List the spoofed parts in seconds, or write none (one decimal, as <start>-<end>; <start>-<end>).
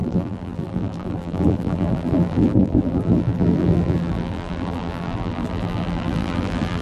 0.0-6.8